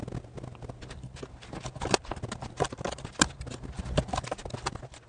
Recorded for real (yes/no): yes